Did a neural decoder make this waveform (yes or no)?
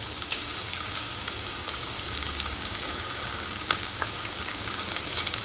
yes